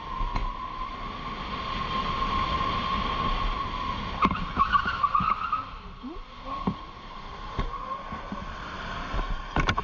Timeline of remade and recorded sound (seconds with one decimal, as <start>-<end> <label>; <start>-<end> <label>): 0.0-9.8 recorded